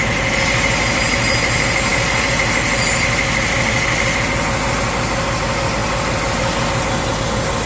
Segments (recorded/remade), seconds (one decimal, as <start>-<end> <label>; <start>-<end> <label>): 0.0-7.7 recorded